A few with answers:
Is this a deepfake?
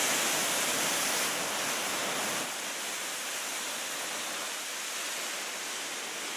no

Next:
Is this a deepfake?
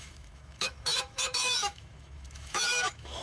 yes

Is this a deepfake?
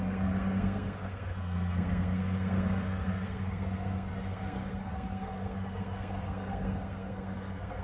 yes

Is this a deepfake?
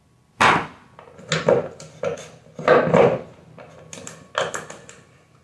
no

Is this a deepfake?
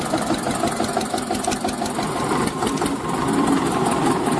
no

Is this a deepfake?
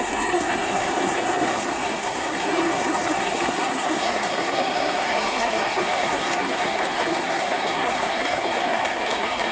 yes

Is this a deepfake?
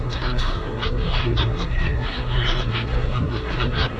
yes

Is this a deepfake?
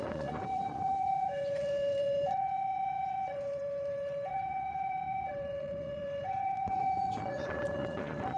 yes